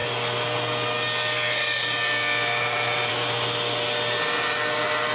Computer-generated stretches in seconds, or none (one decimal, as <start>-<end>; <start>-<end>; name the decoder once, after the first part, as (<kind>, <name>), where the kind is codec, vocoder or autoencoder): none